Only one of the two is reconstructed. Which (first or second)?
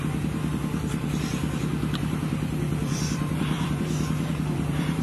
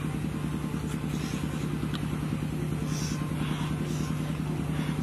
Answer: first